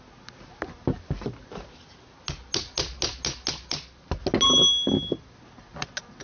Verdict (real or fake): real